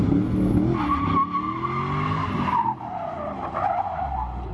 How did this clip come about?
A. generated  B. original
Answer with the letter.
B